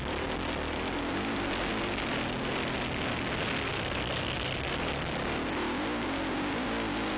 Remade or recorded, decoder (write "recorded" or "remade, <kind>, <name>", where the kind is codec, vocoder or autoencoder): recorded